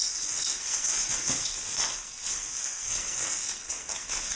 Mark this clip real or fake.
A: fake